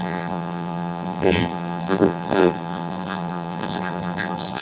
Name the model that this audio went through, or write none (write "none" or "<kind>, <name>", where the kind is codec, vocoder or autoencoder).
vocoder, BigVGAN v2